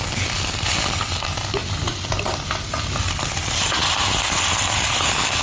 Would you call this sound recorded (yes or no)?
yes